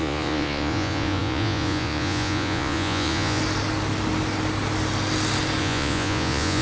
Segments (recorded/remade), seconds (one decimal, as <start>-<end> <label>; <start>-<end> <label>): 0.0-3.4 remade; 3.4-5.6 recorded; 5.6-6.6 remade